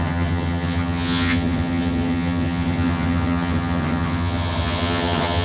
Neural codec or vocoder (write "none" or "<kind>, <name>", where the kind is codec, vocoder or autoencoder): vocoder, HiFi-GAN